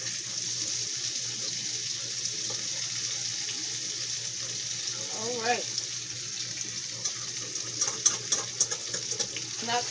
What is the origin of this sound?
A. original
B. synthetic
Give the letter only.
A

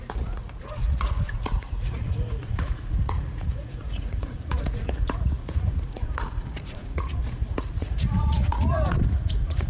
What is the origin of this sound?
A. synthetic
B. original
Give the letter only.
A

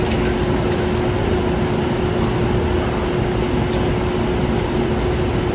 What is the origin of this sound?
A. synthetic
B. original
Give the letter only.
B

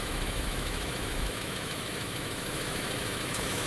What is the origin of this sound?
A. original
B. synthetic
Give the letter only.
B